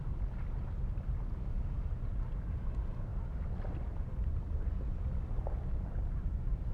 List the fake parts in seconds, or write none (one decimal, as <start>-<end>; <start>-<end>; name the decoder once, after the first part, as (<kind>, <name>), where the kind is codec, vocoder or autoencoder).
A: none